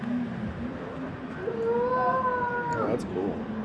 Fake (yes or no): no